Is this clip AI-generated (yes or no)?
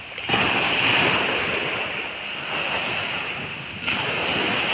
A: no